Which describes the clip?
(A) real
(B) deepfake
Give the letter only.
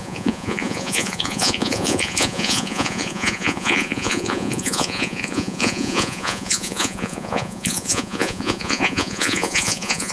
B